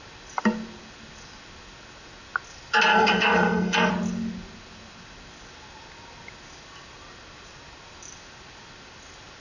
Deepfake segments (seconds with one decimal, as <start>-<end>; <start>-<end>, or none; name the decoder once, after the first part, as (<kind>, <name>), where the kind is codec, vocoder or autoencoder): 2.9-3.9 (codec, SNAC)